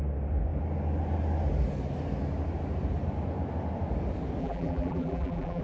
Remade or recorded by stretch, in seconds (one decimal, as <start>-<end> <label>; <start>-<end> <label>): 0.0-4.4 recorded; 4.4-5.6 remade

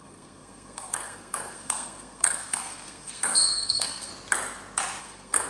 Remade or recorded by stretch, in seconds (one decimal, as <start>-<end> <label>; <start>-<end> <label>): 0.0-4.1 remade; 4.1-5.0 recorded; 5.0-5.5 remade

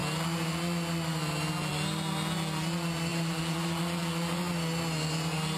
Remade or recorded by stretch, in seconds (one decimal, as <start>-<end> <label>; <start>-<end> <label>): 0.0-3.1 recorded; 3.1-3.8 remade; 3.8-5.6 recorded

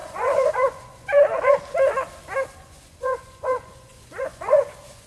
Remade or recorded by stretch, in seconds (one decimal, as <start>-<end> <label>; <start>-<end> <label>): 0.0-1.1 remade; 1.1-2.6 recorded; 2.6-5.1 remade

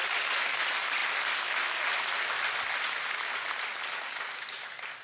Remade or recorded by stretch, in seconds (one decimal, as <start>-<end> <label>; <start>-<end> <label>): 0.0-5.0 recorded

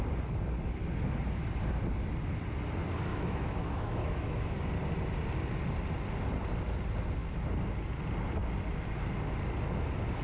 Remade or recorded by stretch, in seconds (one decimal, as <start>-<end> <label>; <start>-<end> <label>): 0.0-3.1 recorded; 3.1-4.5 remade; 4.5-10.2 recorded

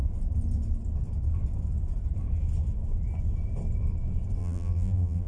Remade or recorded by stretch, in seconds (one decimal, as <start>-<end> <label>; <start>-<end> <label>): 0.0-4.4 recorded; 4.4-5.3 remade

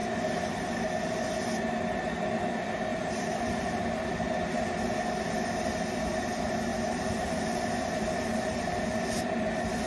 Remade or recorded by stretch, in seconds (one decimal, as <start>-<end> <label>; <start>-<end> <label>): 0.0-2.9 recorded; 2.9-3.4 remade; 3.4-6.7 recorded; 6.7-9.2 remade; 9.2-9.9 recorded